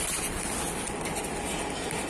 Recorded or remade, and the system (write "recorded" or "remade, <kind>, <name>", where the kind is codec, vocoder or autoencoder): recorded